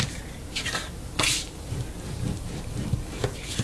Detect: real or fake real